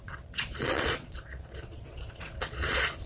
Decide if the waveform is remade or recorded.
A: remade